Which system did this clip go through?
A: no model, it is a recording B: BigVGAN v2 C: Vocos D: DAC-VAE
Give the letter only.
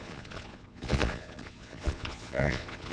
C